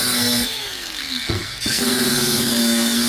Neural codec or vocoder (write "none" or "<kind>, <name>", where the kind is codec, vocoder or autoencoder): codec, SNAC